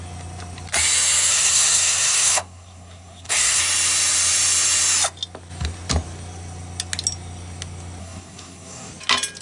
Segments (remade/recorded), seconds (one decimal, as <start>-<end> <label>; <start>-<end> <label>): 0.0-1.3 recorded; 1.3-3.6 remade; 3.6-8.0 recorded; 8.0-8.9 remade; 8.9-9.4 recorded